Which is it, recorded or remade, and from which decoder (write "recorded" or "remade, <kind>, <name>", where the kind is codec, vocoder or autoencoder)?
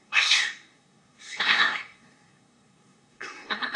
remade, codec, SNAC